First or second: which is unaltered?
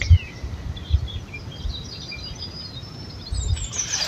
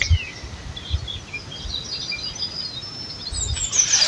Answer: second